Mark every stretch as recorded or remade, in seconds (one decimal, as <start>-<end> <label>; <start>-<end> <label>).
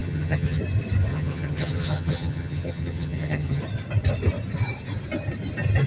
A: 0.0-0.6 remade; 0.6-1.1 recorded; 1.1-3.6 remade; 3.6-5.9 recorded